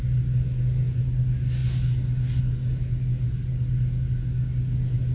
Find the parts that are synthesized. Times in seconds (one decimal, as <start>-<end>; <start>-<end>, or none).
none